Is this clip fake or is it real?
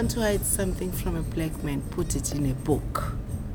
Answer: real